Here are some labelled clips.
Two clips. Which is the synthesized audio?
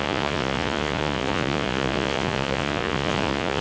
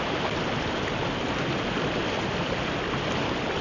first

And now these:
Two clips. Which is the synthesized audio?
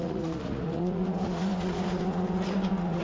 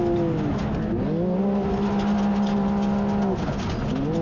first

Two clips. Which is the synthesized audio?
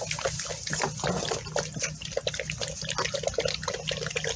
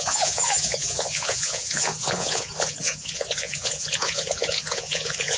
second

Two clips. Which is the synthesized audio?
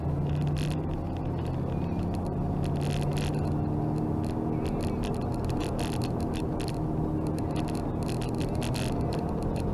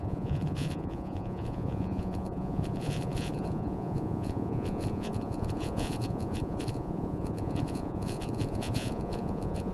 second